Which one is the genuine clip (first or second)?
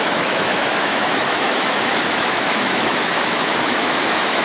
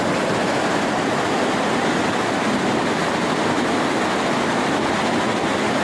second